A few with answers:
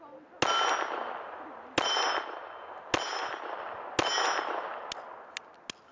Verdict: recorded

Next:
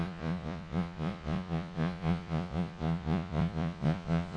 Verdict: remade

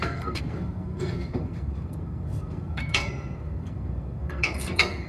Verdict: remade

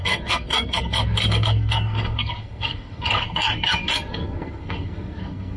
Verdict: remade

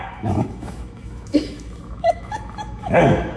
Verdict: remade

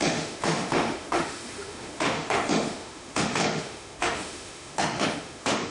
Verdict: remade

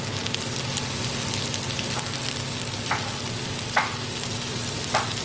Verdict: recorded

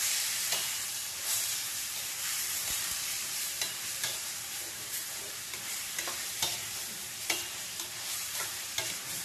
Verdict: remade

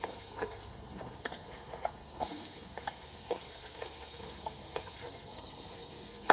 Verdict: remade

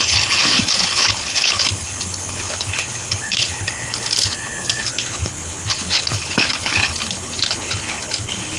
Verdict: remade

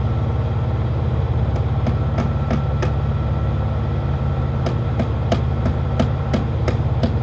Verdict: recorded